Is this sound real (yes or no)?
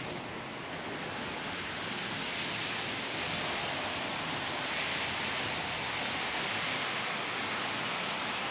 yes